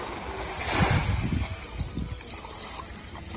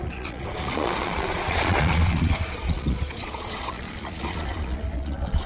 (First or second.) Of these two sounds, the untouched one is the first